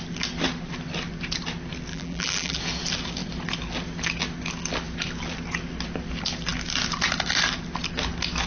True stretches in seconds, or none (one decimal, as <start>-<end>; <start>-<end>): 0.0-1.9; 2.6-8.5